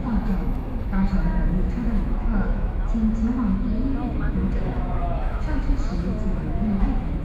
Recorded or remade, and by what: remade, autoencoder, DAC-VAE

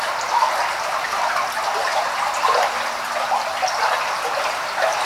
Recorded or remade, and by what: recorded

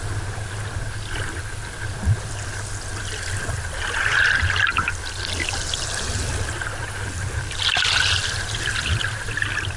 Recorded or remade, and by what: recorded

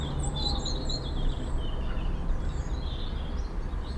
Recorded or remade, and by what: recorded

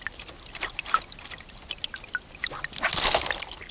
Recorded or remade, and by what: recorded